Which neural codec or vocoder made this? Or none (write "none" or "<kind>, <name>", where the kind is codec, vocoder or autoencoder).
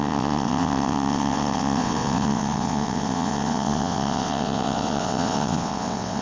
vocoder, WaveNeXt